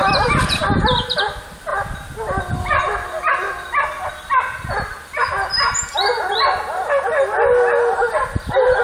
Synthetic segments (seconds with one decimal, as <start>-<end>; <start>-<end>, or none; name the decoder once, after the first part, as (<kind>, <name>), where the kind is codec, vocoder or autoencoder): none